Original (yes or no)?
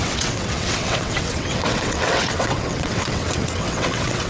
no